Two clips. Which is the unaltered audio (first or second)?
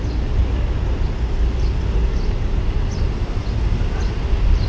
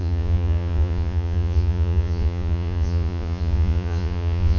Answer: first